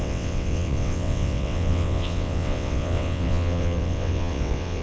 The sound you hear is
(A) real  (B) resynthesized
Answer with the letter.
B